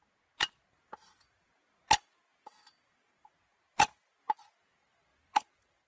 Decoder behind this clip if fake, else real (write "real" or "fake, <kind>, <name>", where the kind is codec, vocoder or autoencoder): real